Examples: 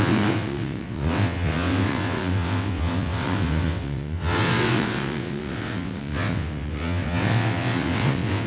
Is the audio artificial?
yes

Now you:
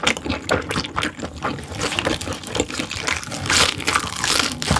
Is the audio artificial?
no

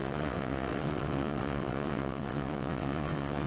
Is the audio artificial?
yes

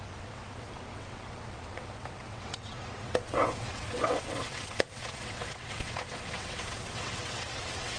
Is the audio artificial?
yes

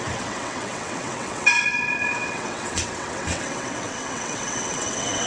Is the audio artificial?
yes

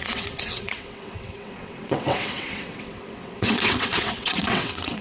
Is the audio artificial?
yes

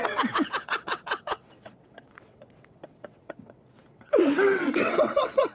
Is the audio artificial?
yes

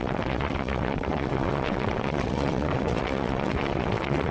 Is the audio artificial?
yes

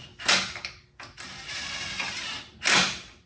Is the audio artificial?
no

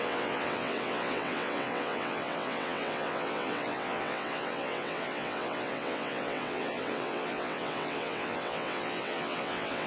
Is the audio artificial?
yes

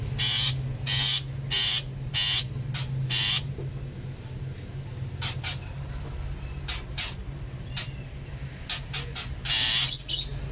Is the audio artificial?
no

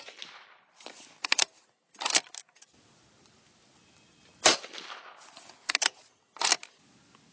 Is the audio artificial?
no